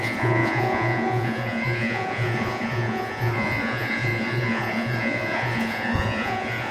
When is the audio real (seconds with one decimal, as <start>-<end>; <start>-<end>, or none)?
none